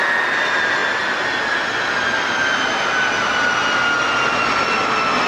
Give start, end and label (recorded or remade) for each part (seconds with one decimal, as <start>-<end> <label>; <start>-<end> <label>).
0.0-5.3 recorded